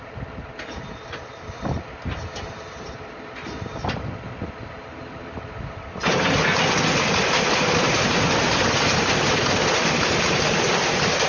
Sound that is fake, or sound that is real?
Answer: real